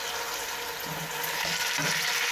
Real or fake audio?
real